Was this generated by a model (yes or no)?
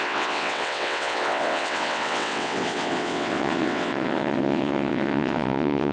yes